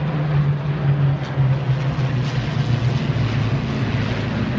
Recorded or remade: recorded